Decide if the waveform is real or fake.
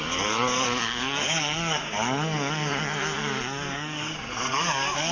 fake